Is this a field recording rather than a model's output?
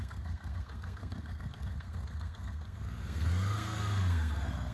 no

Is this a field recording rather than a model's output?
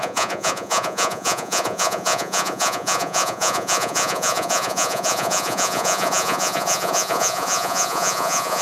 no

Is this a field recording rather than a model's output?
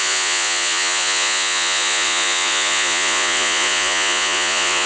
no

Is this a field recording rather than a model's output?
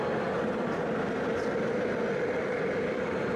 yes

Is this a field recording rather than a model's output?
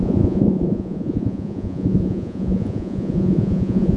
no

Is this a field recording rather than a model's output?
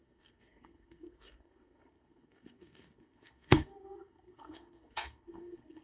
no